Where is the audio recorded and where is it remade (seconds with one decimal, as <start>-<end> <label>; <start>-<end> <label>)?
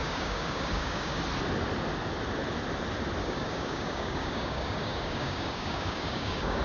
0.0-1.2 remade; 1.2-3.2 recorded; 3.2-6.6 remade